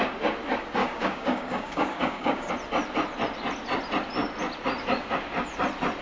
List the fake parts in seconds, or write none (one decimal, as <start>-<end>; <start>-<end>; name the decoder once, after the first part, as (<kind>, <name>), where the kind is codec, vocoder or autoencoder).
0.8-2.5 (codec, DAC)